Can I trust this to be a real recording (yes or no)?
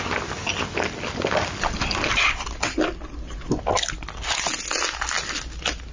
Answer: yes